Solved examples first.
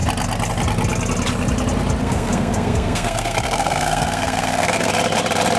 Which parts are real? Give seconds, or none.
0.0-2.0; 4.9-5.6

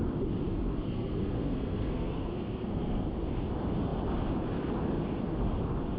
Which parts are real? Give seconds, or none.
0.0-0.5; 3.1-6.0

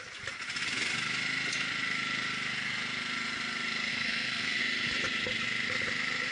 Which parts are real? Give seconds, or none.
0.0-3.9; 4.6-6.3

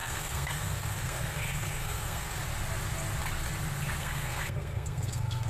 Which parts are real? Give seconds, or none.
2.4-4.0

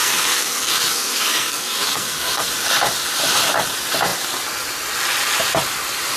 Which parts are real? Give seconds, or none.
2.5-6.2

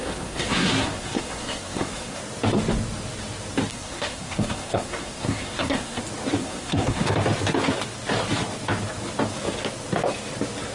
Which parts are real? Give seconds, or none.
2.2-3.7; 6.0-6.4; 7.1-10.7

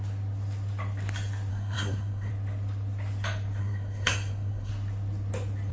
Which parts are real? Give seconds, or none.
0.0-1.5; 2.3-3.6; 4.7-5.7

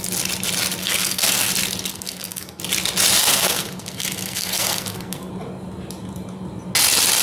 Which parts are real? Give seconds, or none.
0.0-0.8; 1.5-1.9; 2.6-3.2; 5.3-7.2